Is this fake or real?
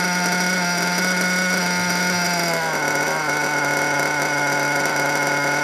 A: real